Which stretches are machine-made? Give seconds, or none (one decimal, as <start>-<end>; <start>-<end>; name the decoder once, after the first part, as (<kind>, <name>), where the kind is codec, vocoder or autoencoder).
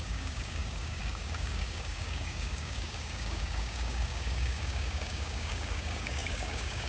0.0-6.9 (codec, DAC)